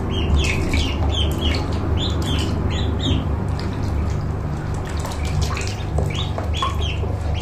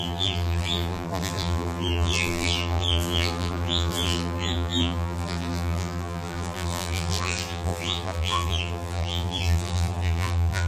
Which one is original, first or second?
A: first